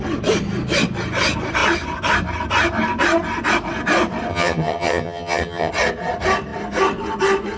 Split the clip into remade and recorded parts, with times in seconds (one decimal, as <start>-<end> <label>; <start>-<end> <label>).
0.0-4.3 recorded; 4.3-5.7 remade; 5.7-7.6 recorded